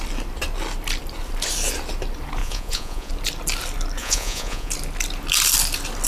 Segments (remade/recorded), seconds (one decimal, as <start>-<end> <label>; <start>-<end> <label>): 0.0-2.4 recorded; 2.4-3.1 remade; 3.1-4.0 recorded; 4.0-4.7 remade; 4.7-6.1 recorded